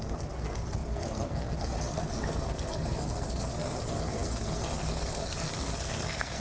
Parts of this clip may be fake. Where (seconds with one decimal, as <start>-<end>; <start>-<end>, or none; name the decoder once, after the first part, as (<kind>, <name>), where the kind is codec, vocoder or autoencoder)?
0.0-6.4 (codec, SNAC)